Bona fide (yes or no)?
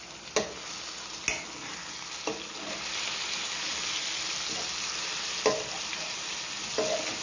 yes